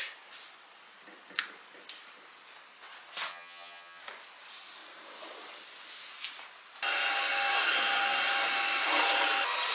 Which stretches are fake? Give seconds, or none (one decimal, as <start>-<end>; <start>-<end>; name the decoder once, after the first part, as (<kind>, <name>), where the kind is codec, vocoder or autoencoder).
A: 3.3-4.0 (vocoder, HiFi-GAN)